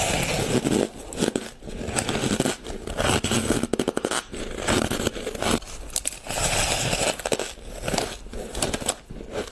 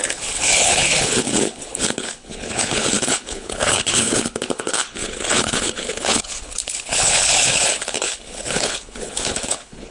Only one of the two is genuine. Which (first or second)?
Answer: first